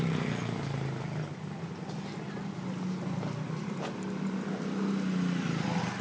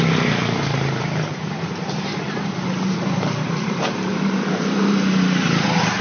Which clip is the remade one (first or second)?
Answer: second